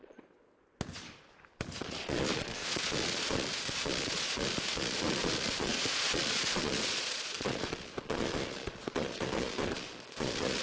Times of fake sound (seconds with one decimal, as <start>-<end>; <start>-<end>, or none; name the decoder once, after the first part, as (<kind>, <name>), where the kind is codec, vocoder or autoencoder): 0.0-0.4 (vocoder, Vocos); 1.8-10.6